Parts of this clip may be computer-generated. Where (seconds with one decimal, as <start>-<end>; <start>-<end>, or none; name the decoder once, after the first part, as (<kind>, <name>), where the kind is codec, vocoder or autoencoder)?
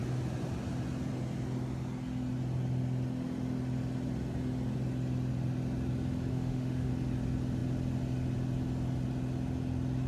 6.3-6.9 (autoencoder, DAC-VAE)